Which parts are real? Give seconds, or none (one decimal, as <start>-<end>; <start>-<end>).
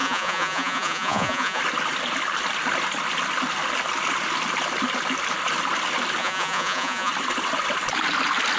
1.6-6.2; 7.1-8.6